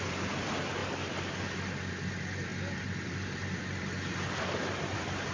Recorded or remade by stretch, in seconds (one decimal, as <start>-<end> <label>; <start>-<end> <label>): 0.0-5.3 recorded